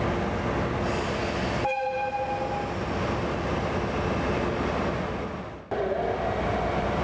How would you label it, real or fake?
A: real